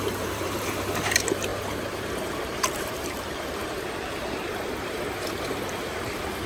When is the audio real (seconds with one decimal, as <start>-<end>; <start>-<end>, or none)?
none

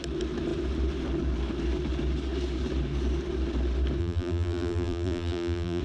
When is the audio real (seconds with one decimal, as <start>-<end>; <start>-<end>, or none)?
0.0-4.0

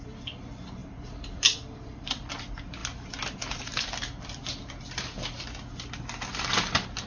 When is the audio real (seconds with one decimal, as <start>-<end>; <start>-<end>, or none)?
0.0-0.8; 2.3-2.8; 3.8-7.1

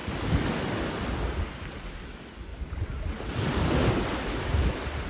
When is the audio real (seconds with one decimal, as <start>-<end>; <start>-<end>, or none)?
0.0-5.1

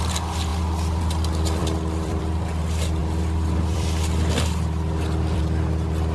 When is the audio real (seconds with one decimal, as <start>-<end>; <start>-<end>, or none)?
0.0-1.6; 2.2-3.0; 5.4-6.1

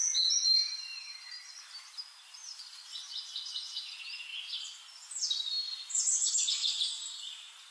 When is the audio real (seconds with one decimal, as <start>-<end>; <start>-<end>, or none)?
0.0-0.9; 1.6-2.4; 2.9-7.7

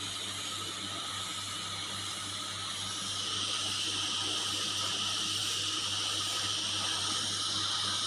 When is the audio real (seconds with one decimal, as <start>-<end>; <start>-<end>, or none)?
1.3-4.4; 5.4-7.0

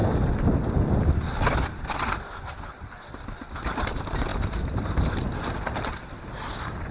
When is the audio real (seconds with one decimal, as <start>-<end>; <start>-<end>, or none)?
2.5-3.1